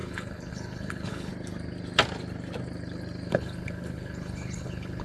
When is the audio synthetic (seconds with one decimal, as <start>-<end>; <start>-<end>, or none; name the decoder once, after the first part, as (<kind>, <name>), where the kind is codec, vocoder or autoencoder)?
0.0-1.3 (codec, HILCodec); 3.3-5.0